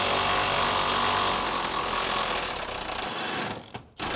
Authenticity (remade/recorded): recorded